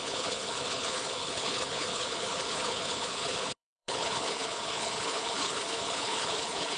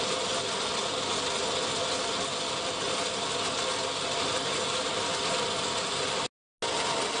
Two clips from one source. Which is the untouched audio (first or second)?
second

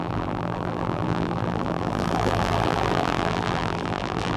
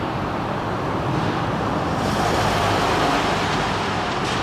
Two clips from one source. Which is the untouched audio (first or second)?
second